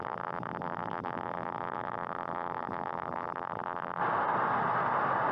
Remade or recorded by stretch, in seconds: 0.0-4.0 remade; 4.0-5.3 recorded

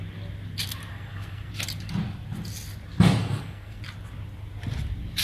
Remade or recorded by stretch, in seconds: 0.0-0.9 recorded; 0.9-1.5 remade; 1.5-3.2 recorded; 3.2-3.8 remade; 3.8-5.2 recorded